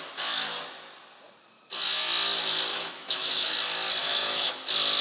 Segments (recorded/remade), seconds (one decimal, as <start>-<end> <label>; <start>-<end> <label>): 0.0-2.7 recorded; 2.7-3.6 remade; 3.6-4.0 recorded; 4.0-4.5 remade; 4.5-5.0 recorded